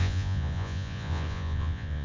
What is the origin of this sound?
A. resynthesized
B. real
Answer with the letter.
A